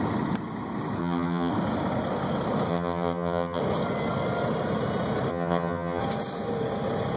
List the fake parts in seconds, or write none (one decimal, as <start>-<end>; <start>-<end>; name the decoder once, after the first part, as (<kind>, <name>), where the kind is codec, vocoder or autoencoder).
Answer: 1.0-1.5 (vocoder, HiFi-GAN); 2.7-3.6; 5.3-6.0